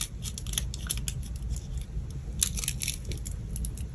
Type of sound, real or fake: real